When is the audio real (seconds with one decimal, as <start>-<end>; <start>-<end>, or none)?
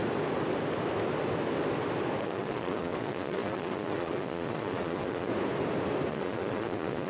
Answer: 0.0-2.2; 5.3-6.1